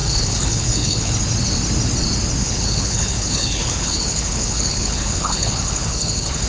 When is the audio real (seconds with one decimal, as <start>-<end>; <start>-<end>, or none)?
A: 1.1-2.4